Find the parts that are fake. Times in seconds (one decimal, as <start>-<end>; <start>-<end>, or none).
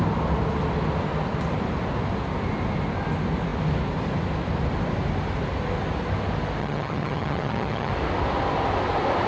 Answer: 6.6-7.9